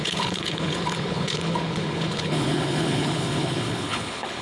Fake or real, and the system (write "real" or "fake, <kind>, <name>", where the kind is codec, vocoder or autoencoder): fake, codec, HILCodec